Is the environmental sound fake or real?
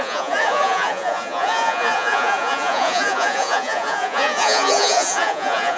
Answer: fake